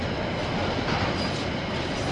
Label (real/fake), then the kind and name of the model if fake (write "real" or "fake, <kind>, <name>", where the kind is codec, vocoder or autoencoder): real